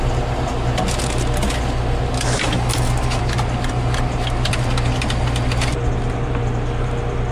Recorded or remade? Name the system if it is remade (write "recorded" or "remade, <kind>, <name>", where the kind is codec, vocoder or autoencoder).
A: recorded